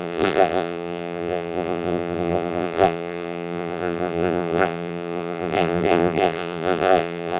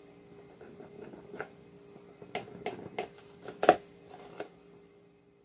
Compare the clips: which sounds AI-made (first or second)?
first